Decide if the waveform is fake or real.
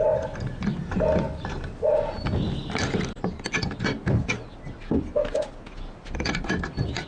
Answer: real